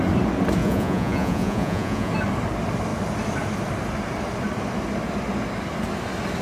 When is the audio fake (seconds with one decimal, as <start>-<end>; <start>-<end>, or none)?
0.6-2.1